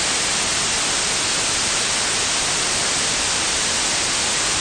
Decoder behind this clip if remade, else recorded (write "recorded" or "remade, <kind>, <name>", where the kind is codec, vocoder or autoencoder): recorded